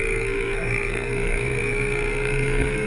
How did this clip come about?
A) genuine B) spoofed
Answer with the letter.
B